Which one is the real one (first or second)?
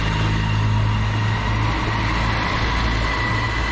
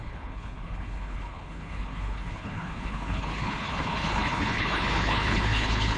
first